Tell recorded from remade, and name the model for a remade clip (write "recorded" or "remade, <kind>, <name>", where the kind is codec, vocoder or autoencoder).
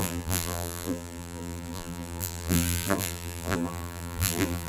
remade, vocoder, BigVGAN v2